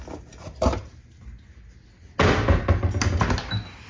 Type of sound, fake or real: real